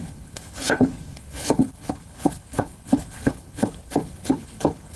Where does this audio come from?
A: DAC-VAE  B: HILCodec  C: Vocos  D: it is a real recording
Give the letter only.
B